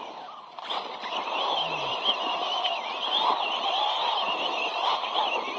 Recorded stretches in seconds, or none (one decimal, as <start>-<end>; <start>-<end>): 0.0-5.6